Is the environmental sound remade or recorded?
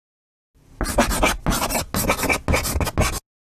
recorded